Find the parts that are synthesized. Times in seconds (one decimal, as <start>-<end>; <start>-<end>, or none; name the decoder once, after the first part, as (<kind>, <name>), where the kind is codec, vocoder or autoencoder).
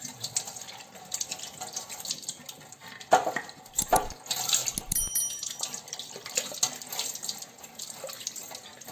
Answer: none